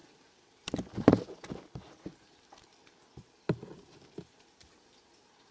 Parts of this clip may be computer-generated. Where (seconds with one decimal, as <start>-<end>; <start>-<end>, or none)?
none